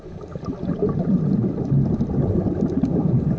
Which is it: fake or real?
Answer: real